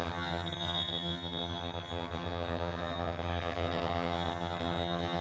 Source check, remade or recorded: remade